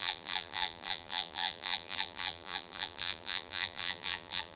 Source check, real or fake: fake